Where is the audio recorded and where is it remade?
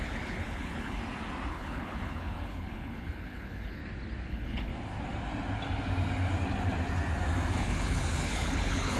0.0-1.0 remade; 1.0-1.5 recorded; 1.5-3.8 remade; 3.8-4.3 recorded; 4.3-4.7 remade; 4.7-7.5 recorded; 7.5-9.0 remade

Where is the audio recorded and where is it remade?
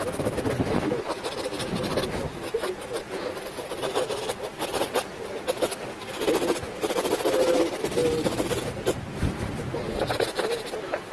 0.0-11.1 recorded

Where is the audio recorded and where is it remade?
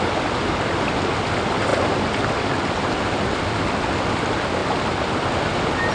0.0-5.9 recorded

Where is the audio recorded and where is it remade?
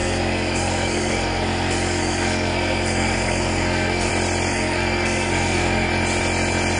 0.0-4.1 remade; 4.1-4.5 recorded; 4.5-5.9 remade; 5.9-6.8 recorded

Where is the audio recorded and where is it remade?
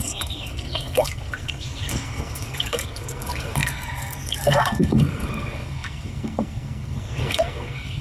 0.0-8.0 remade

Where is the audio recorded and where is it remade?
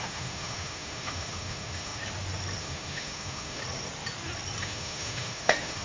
0.0-2.0 remade; 2.0-2.6 recorded; 2.6-3.6 remade; 3.6-4.6 recorded; 4.6-5.8 remade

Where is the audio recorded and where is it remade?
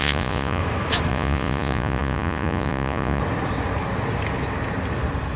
0.0-0.6 remade; 0.6-1.1 recorded; 1.1-3.2 remade; 3.2-5.4 recorded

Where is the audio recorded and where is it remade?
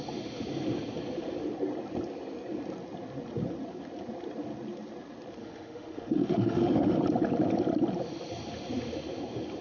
0.0-5.4 recorded; 5.4-7.0 remade; 7.0-9.6 recorded